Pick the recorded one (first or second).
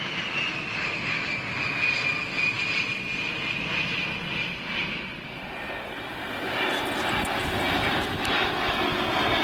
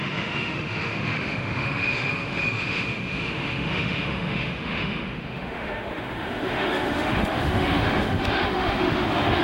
first